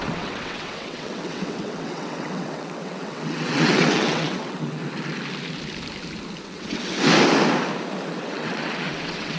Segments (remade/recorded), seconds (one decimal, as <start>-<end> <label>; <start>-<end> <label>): 0.0-4.8 remade; 4.8-6.4 recorded; 6.4-6.9 remade; 6.9-8.2 recorded; 8.2-9.4 remade